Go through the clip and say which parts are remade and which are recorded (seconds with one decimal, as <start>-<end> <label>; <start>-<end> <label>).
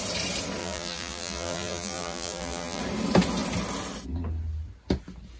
0.0-0.6 recorded; 0.6-2.8 remade; 2.8-5.4 recorded